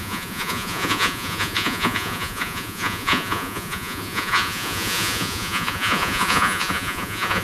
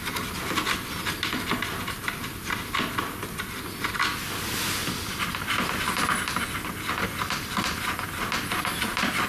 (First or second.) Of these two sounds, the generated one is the first